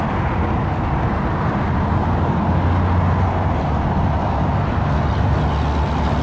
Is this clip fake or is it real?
real